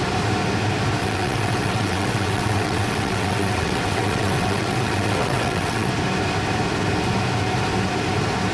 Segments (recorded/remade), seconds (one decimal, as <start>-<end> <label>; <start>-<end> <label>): 0.0-1.0 recorded; 1.0-5.9 remade; 5.9-8.5 recorded